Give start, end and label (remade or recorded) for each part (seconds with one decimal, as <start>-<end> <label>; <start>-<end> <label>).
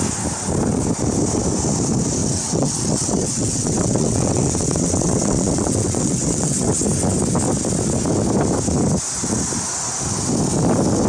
0.0-2.2 recorded; 2.2-6.7 remade; 6.7-11.1 recorded